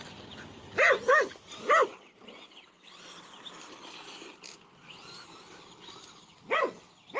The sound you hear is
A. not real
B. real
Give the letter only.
B